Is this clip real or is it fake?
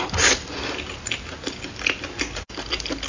real